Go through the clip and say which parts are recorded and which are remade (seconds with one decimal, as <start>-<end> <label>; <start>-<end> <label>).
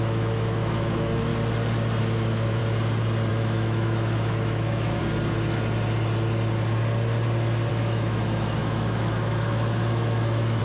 0.0-1.3 remade; 1.3-2.0 recorded; 2.0-2.6 remade; 2.6-3.3 recorded; 3.3-5.0 remade; 5.0-7.7 recorded; 7.7-10.6 remade